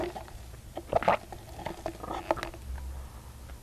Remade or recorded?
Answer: recorded